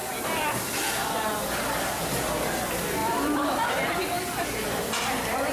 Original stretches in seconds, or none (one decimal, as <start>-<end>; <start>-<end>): 0.8-3.0; 3.9-5.5